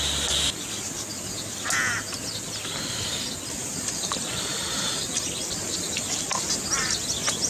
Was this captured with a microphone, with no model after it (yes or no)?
yes